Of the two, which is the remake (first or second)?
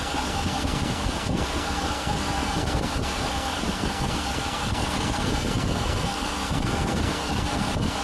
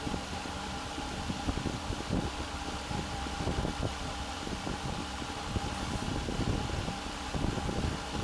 first